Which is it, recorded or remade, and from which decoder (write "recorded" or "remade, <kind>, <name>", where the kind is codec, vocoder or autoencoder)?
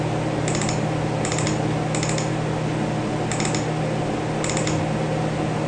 recorded